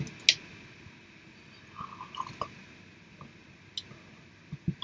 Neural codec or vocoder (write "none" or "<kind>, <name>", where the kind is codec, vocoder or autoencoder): none